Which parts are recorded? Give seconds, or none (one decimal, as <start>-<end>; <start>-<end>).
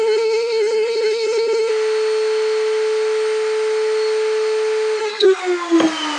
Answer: 1.7-5.0; 5.4-6.2